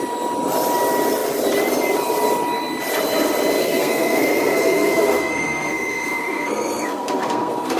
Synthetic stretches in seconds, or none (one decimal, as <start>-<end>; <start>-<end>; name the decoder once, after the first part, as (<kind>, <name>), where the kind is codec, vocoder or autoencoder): 3.6-7.8 (codec, SNAC)